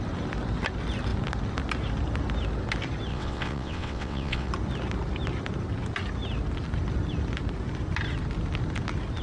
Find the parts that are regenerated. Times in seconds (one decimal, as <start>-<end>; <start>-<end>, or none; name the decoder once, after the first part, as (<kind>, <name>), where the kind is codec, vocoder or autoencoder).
3.1-4.5 (vocoder, WaveNeXt)